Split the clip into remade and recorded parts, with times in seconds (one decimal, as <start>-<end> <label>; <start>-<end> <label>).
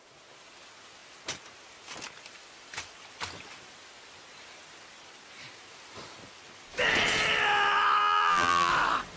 0.0-8.0 recorded; 8.0-8.7 remade; 8.7-9.2 recorded